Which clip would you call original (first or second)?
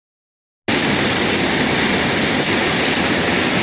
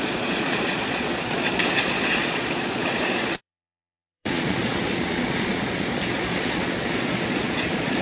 first